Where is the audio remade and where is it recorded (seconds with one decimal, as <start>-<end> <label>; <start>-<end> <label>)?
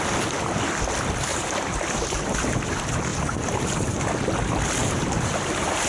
0.0-1.3 recorded; 1.3-2.5 remade; 2.5-3.1 recorded; 3.1-4.0 remade; 4.0-4.8 recorded; 4.8-5.9 remade